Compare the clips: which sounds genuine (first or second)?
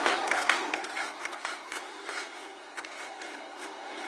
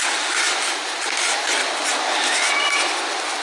second